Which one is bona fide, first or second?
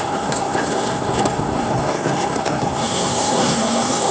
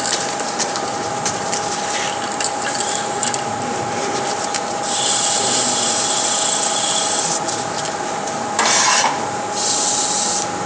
second